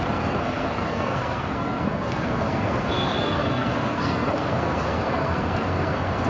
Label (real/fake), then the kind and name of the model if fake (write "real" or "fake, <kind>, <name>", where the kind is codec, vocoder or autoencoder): fake, codec, SNAC